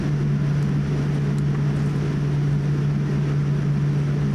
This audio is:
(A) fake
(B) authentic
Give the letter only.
B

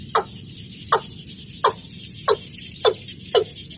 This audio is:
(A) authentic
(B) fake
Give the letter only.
A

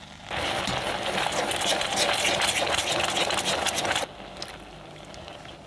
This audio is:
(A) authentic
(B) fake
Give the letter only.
A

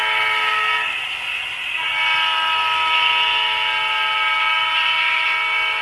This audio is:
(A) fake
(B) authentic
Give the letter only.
B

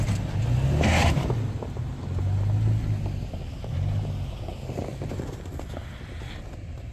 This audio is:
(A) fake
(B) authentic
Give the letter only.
B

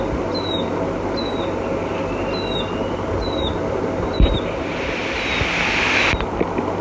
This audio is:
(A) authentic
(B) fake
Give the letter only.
A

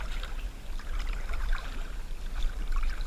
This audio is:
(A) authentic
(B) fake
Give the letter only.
B